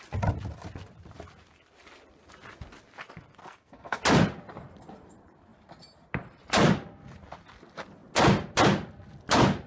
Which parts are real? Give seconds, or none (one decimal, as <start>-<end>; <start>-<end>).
0.0-3.4; 4.0-9.7